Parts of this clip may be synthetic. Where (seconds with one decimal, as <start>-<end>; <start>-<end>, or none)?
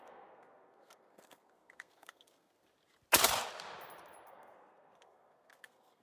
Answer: 0.0-2.6; 4.3-6.0